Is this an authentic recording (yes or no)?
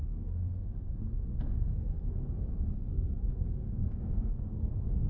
no